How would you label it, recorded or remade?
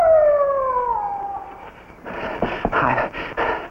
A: recorded